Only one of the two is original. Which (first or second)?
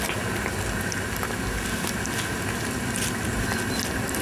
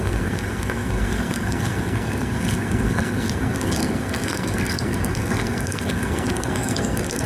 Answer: first